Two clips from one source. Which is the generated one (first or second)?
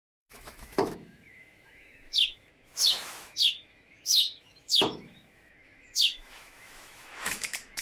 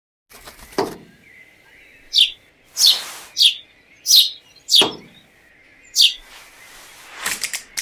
first